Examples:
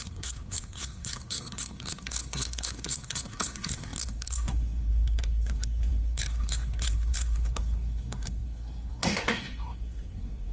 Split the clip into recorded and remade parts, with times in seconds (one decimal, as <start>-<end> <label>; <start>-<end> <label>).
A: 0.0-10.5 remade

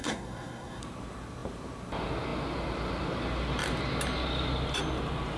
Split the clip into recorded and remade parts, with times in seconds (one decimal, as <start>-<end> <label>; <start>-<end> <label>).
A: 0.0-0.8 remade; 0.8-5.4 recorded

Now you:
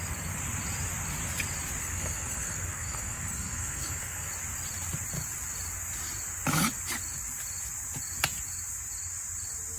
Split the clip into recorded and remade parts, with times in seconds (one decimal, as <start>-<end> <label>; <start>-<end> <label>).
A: 0.0-1.8 recorded; 1.8-4.3 remade; 4.3-9.8 recorded

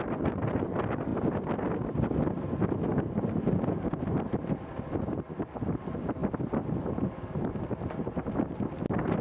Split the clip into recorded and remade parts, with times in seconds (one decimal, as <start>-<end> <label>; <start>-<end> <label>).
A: 0.0-9.2 recorded

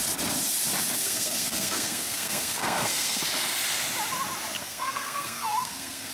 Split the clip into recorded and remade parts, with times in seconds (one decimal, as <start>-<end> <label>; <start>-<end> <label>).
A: 0.0-1.0 recorded; 1.0-3.2 remade; 3.2-4.6 recorded; 4.6-6.1 remade